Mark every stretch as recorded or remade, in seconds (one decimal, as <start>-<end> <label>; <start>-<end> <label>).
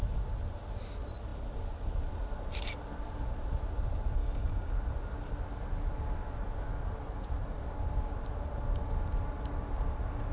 0.0-4.2 recorded; 4.2-4.7 remade; 4.7-10.3 recorded